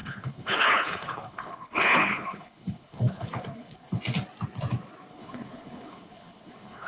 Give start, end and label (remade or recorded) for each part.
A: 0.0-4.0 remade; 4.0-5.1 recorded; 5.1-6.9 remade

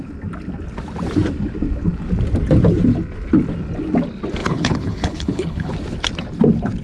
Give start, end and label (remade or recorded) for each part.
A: 0.0-4.4 recorded; 4.4-5.7 remade; 5.7-6.8 recorded

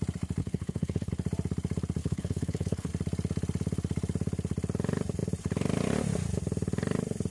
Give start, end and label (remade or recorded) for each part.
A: 0.0-0.4 recorded; 0.4-1.1 remade; 1.1-2.0 recorded; 2.0-2.9 remade; 2.9-7.3 recorded

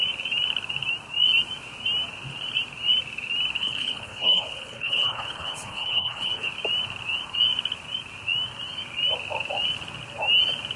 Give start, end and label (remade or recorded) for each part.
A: 0.0-3.6 recorded; 3.6-6.5 remade; 6.5-10.8 recorded